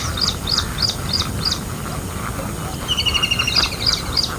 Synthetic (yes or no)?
no